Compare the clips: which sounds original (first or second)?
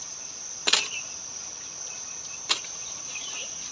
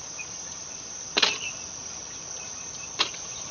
first